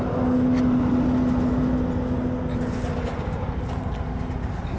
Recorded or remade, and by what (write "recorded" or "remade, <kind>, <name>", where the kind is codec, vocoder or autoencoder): recorded